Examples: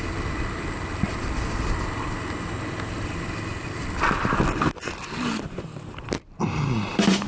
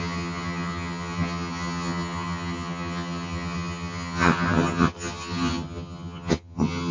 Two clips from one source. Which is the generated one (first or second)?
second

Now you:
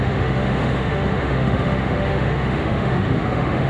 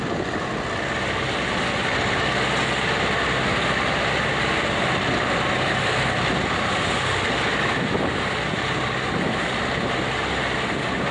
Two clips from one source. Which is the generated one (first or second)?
first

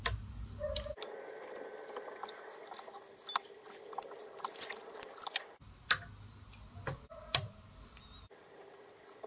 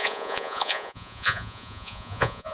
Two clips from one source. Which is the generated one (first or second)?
second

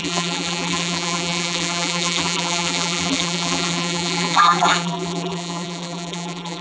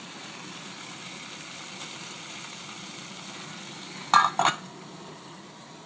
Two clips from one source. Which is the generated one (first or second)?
first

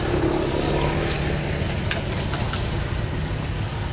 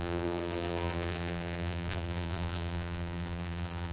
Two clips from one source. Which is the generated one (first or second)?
second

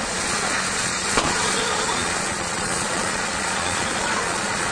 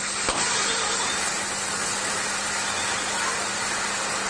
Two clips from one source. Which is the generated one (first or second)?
first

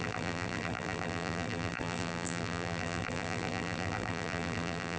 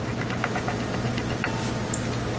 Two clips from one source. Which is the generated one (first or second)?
first